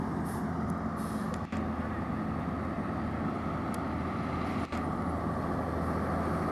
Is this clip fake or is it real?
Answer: real